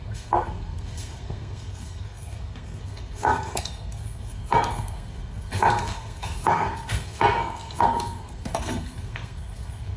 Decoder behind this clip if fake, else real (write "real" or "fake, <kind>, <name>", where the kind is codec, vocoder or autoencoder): fake, codec, SNAC